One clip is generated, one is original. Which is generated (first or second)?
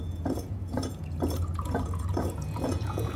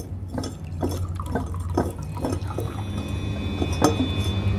first